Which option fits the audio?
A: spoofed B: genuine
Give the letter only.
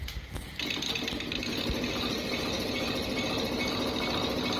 B